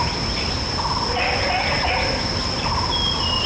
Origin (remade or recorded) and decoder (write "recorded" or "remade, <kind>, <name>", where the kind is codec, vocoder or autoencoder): recorded